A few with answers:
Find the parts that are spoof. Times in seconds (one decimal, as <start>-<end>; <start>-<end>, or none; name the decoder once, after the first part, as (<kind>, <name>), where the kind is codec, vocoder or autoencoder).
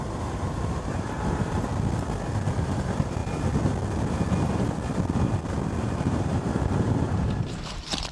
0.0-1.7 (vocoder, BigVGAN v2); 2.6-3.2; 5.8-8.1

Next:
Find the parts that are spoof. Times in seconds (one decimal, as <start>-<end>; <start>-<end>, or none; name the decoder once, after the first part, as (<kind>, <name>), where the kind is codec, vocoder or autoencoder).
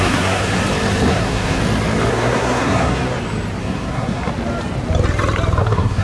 0.0-0.6 (codec, SNAC); 1.1-1.6; 2.1-3.0; 3.6-4.3; 5.6-6.0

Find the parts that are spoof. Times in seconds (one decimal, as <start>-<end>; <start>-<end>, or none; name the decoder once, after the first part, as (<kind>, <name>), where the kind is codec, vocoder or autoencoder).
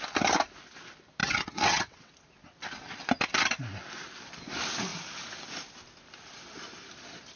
1.2-2.1 (vocoder, WaveNeXt)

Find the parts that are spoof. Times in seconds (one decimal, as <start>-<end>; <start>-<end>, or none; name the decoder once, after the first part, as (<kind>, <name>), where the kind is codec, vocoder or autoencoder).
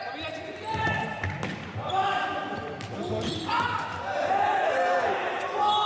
1.5-4.5 (vocoder, BigVGAN v2)